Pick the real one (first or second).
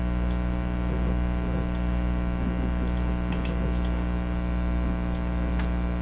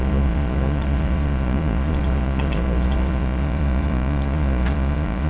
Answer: first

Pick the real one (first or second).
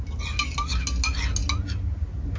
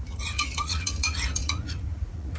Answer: first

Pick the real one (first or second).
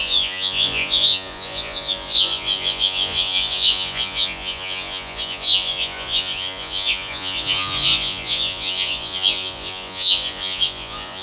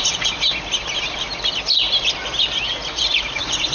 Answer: second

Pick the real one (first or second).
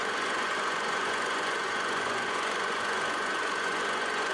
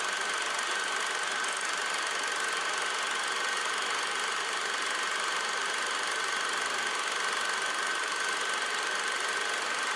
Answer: second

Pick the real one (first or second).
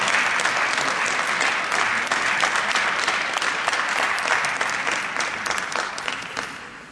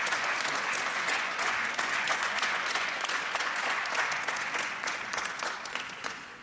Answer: first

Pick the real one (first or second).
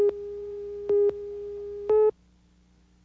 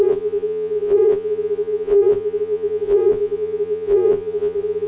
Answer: first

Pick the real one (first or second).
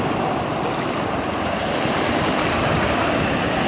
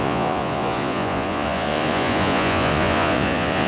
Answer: first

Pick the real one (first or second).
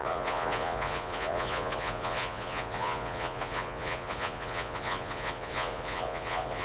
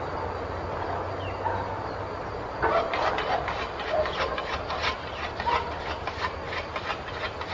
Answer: second